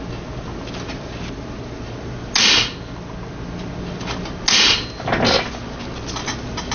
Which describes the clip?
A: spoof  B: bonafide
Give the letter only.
B